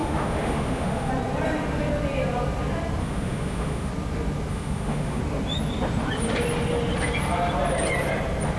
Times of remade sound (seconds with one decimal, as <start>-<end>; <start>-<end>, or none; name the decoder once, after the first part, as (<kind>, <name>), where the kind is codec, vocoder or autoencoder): 0.0-1.1 (autoencoder, DAC-VAE); 3.0-3.9; 4.5-5.2